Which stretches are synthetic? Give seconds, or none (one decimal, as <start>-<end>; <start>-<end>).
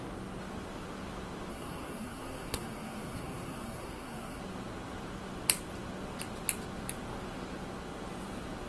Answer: 1.5-4.4